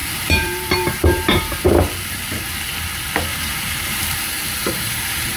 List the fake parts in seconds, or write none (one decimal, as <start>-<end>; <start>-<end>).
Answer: 0.0-1.6; 3.3-5.4